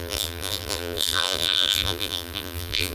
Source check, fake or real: fake